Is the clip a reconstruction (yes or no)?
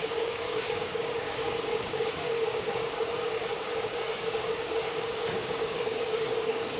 yes